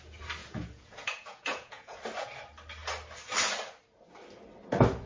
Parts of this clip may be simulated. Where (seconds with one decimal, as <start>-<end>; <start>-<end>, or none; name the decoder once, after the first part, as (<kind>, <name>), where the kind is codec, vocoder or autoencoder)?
0.4-2.0 (vocoder, Vocos)